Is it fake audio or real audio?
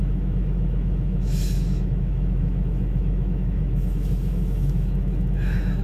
fake